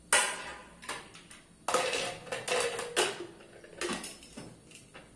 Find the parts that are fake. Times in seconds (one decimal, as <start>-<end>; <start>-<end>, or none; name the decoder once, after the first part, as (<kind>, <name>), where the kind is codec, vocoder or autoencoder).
none